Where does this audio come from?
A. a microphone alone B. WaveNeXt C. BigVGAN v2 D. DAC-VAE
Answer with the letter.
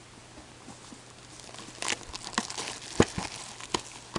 A